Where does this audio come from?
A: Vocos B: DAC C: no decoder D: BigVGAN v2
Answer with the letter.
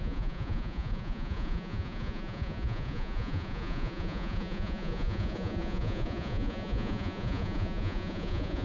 A